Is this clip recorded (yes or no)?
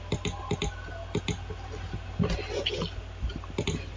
yes